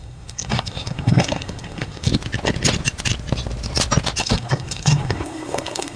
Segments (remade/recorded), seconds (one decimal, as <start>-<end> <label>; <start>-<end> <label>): 0.0-2.1 remade; 2.1-4.2 recorded; 4.2-6.0 remade